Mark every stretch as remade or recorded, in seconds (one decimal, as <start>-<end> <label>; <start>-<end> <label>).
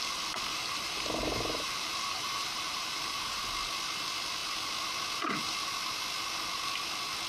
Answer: 0.0-0.5 recorded; 0.5-3.4 remade; 3.4-7.3 recorded